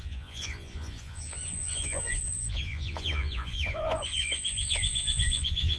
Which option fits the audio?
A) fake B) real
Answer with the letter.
A